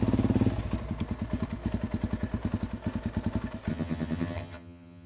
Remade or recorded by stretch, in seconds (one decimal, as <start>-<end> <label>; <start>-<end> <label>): 0.0-3.7 recorded; 3.7-5.1 remade